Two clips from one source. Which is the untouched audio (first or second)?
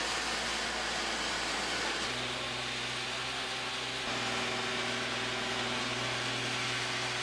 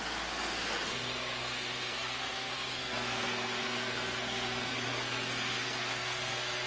first